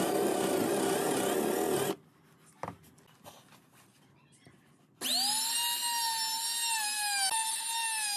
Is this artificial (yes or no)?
no